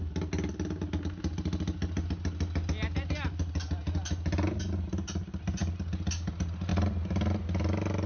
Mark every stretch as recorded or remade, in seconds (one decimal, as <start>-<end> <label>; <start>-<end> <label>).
0.0-8.1 recorded